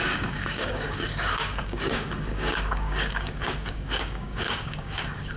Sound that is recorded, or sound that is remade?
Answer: remade